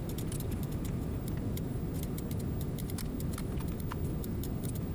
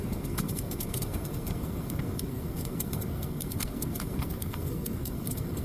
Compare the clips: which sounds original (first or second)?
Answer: first